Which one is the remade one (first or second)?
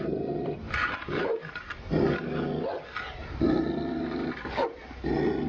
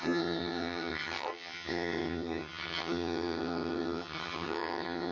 second